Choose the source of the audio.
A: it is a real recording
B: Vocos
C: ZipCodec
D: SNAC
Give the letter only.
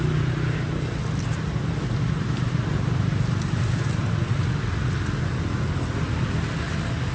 A